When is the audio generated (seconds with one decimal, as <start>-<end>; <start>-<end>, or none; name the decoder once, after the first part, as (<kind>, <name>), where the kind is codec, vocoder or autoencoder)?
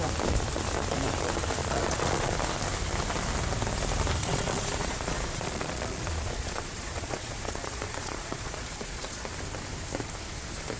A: 1.6-2.3 (vocoder, Vocos); 4.2-9.2